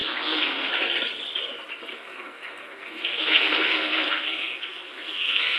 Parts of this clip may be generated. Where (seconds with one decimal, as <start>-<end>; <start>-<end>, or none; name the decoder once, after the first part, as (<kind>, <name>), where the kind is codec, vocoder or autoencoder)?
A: 0.0-0.7 (codec, SNAC); 1.9-5.6